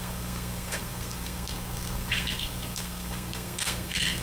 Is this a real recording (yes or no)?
no